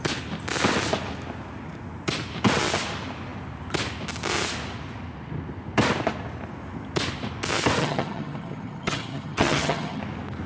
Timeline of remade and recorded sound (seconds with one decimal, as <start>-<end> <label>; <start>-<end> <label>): 0.0-7.8 recorded; 7.8-10.0 remade; 10.0-10.5 recorded